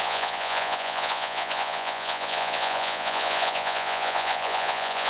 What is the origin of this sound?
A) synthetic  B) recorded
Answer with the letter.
A